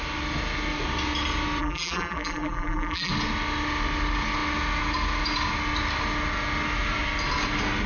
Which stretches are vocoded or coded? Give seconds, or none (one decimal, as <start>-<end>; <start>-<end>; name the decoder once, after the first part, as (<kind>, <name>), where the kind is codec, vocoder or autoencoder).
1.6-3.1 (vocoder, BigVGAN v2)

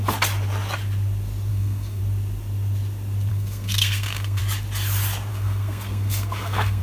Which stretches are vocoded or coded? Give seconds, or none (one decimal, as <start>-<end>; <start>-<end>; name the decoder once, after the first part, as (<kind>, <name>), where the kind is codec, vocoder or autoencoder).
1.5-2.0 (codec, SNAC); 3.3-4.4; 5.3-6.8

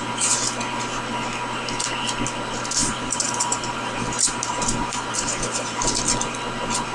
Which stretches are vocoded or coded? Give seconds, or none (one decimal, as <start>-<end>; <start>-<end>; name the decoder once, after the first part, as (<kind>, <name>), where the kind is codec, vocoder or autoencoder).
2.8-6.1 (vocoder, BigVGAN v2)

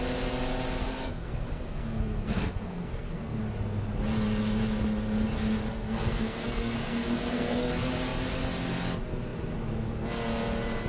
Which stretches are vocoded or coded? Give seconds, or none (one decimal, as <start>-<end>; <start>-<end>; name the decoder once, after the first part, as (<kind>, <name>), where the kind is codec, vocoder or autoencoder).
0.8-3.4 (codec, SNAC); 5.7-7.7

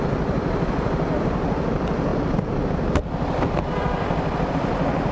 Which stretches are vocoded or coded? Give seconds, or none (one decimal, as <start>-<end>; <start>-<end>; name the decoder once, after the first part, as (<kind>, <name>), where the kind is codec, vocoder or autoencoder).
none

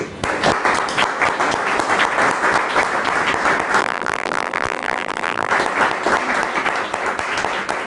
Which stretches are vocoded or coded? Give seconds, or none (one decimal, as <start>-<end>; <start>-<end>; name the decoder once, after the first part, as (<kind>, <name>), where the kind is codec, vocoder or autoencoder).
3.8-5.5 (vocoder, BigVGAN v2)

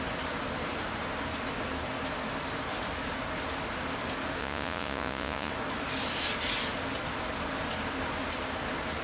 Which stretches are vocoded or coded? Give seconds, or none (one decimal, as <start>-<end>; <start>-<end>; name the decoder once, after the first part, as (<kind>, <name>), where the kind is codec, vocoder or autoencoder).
4.4-5.5 (vocoder, Vocos)